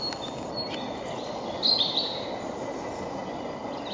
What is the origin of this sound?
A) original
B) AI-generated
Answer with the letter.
A